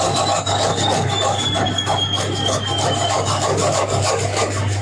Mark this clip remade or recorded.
remade